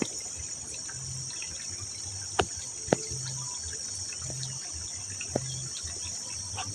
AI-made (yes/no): no